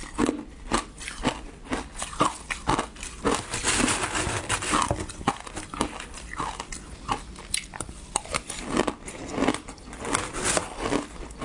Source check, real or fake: real